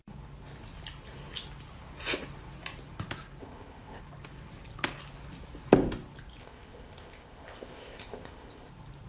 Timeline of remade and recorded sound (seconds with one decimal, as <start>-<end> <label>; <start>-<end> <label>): 0.0-3.4 recorded; 3.4-4.0 remade; 4.0-6.4 recorded; 6.4-8.7 remade; 8.7-9.1 recorded